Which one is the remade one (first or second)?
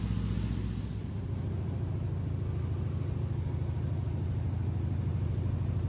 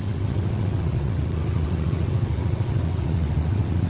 second